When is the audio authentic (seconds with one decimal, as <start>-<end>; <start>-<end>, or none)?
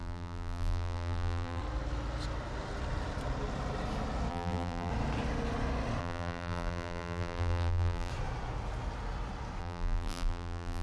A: 1.6-4.3; 4.9-6.0; 8.1-9.6